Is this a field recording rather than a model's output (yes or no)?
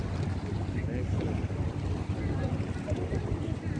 yes